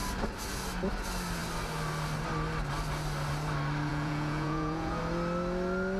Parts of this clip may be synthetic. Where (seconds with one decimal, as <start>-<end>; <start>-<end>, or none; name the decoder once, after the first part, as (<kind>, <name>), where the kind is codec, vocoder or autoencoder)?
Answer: 3.9-5.0 (vocoder, Vocos)